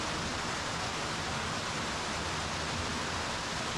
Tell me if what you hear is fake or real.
real